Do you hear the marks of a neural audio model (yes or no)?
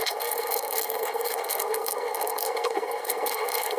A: yes